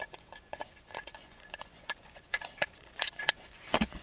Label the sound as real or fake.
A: fake